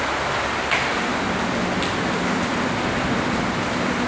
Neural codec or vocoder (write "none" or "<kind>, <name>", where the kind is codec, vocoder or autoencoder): none